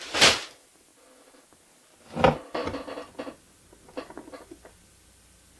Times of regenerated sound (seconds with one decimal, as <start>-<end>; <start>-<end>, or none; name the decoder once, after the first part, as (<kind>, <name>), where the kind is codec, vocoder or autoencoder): 0.0-0.9 (vocoder, BigVGAN v2); 4.3-5.6

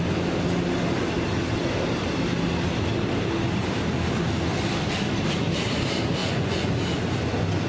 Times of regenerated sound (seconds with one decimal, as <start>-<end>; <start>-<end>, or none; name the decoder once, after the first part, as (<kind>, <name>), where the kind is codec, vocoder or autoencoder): 6.2-6.7 (vocoder, Vocos)

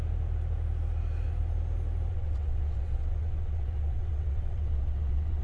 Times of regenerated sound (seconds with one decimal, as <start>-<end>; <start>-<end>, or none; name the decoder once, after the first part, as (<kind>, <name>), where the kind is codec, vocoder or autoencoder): 2.1-5.4 (vocoder, WaveNeXt)

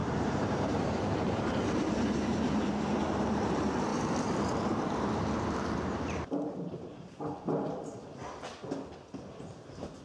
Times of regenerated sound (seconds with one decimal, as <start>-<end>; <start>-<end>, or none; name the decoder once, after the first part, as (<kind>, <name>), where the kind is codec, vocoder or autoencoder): 0.0-8.2 (vocoder, BigVGAN v2); 9.4-10.0

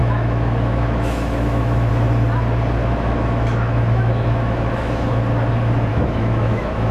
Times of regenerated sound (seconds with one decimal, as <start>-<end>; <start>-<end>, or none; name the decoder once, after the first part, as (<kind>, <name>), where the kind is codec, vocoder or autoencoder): 0.0-1.9 (autoencoder, DAC-VAE); 2.8-5.2; 5.9-6.9

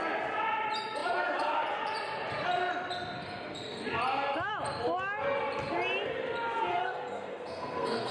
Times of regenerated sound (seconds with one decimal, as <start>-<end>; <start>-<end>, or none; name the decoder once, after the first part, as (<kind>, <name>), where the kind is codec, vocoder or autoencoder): 6.7-8.1 (codec, SNAC)

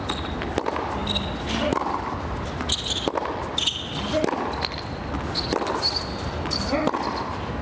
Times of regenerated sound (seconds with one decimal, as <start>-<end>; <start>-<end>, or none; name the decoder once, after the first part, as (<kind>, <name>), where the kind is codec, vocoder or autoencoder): none

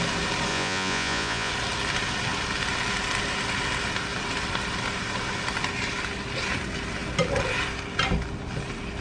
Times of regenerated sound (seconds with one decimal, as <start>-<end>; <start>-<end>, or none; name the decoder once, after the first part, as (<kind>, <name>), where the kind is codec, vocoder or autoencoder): 0.5-1.5 (vocoder, Vocos)